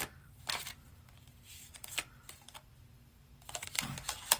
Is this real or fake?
fake